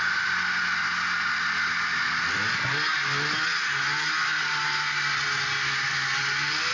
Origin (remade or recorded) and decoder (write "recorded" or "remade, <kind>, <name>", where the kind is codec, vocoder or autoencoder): recorded